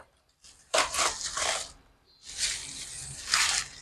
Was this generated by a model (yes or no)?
no